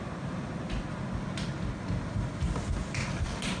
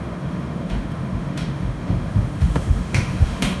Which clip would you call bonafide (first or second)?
first